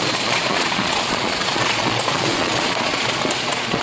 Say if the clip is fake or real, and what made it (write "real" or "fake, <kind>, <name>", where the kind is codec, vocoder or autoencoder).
fake, vocoder, Vocos